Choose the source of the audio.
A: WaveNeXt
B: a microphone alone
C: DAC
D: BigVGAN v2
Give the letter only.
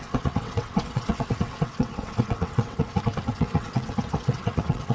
A